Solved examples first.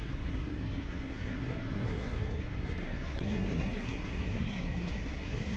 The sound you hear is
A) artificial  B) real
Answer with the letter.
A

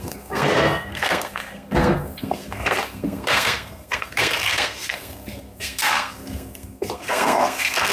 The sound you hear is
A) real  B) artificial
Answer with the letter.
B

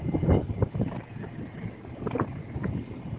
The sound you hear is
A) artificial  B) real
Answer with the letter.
B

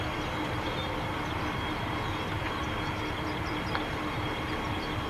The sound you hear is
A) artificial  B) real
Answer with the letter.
B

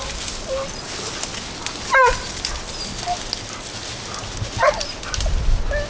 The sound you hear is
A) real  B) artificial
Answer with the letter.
A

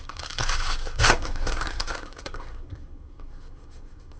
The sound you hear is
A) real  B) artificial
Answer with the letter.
B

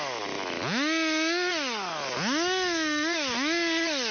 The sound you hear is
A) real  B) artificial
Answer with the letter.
A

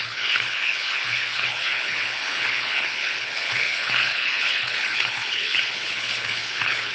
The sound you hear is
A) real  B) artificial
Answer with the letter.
B